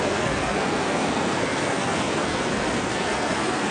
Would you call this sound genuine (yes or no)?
no